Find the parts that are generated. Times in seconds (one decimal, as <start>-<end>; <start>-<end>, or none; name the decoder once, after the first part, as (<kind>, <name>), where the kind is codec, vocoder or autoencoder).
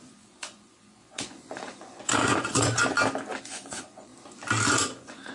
0.0-2.8 (vocoder, Vocos); 3.4-4.1; 4.7-5.3